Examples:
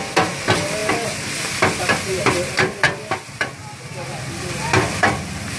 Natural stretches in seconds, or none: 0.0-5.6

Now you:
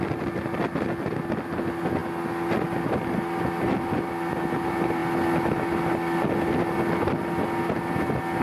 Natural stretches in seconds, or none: 0.0-8.4

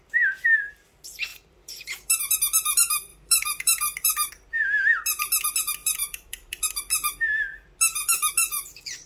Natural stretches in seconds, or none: 0.0-1.3; 2.2-3.1; 4.3-5.8; 6.6-8.4

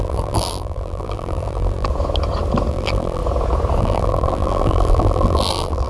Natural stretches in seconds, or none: 1.9-2.7; 3.2-3.8

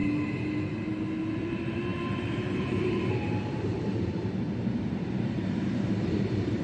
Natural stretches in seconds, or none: 0.0-1.3

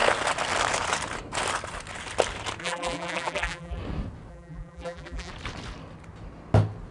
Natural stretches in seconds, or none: 0.0-2.6; 3.8-4.3; 5.3-6.9

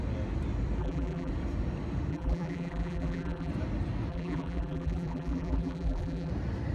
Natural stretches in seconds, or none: 0.0-0.8; 1.3-2.1; 3.5-4.1; 6.3-6.7